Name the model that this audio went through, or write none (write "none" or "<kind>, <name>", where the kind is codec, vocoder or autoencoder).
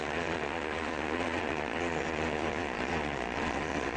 vocoder, Vocos